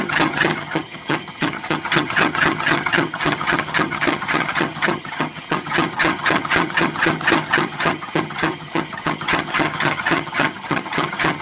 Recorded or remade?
remade